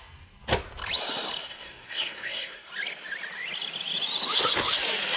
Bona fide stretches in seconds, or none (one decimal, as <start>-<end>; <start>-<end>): 0.0-1.4; 2.7-5.2

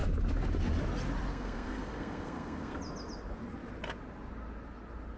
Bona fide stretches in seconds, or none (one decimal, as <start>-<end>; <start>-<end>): 0.0-1.3; 2.8-5.2

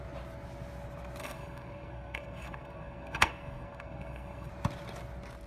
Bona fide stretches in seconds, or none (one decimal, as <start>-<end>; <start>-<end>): 0.0-1.2; 4.5-5.5

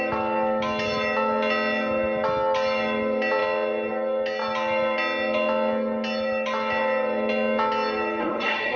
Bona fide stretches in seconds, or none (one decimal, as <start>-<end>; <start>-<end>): 0.0-8.2

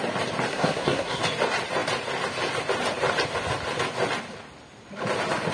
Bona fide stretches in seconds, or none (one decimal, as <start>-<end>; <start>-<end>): 0.0-0.5; 1.2-5.5